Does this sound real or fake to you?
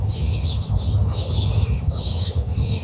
fake